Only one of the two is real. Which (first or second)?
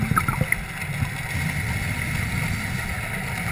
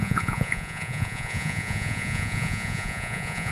first